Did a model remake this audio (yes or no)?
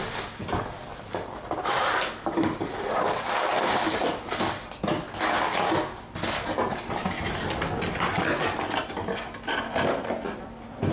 no